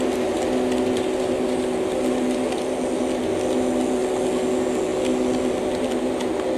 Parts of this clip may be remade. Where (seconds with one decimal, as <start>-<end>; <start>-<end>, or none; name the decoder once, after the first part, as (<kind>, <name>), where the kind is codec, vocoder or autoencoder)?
none